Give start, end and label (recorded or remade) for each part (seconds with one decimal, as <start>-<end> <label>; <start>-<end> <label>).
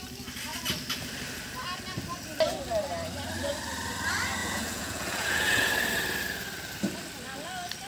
0.0-4.4 recorded; 4.4-5.7 remade; 5.7-7.9 recorded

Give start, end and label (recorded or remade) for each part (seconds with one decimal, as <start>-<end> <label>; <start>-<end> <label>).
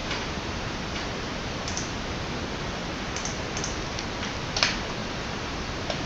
0.0-1.6 remade; 1.6-5.0 recorded; 5.0-6.1 remade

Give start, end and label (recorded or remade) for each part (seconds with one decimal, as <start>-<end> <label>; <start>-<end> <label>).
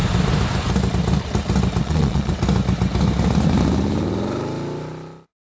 0.0-1.8 recorded; 1.8-2.3 remade; 2.3-5.6 recorded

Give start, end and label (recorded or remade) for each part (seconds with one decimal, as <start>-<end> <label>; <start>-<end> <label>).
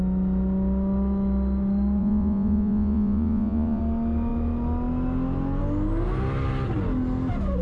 0.0-2.0 recorded; 2.0-3.8 remade; 3.8-7.6 recorded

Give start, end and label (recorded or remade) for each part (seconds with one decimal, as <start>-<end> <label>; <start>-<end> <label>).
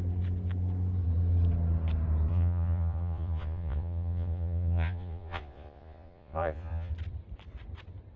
0.0-2.3 recorded; 2.3-6.9 remade; 6.9-8.2 recorded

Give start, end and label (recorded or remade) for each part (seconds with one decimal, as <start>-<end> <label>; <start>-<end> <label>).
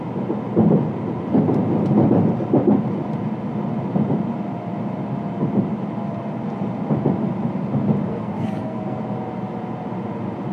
0.0-8.1 recorded; 8.1-9.0 remade; 9.0-10.5 recorded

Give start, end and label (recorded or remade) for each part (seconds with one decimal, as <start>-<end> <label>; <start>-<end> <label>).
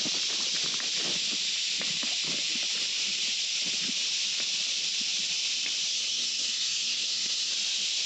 0.0-5.9 recorded; 5.9-7.5 remade; 7.5-8.1 recorded